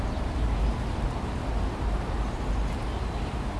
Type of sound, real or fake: real